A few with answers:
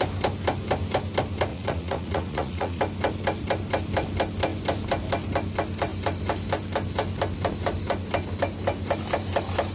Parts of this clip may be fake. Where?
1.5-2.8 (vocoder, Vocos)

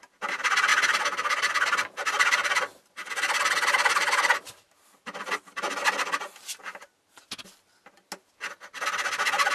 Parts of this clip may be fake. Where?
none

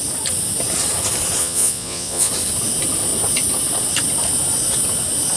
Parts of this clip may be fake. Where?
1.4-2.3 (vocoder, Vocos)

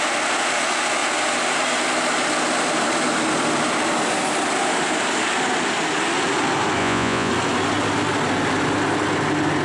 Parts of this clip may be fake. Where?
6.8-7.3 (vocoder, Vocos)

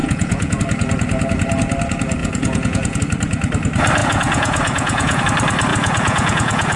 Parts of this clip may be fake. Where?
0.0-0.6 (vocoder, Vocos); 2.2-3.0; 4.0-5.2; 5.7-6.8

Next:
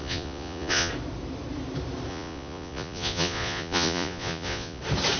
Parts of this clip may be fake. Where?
0.0-0.9 (vocoder, Vocos); 2.1-4.8

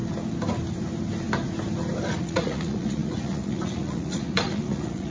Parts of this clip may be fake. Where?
2.2-5.1 (vocoder, Vocos)